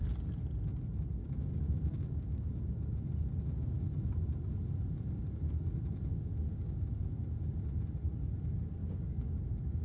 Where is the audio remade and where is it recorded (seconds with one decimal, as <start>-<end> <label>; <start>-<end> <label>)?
0.0-1.2 recorded; 1.2-2.5 remade; 2.5-6.1 recorded; 6.1-6.8 remade; 6.8-8.8 recorded; 8.8-9.4 remade; 9.4-9.8 recorded